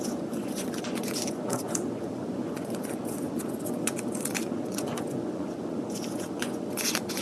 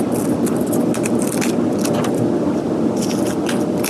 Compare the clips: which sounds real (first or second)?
second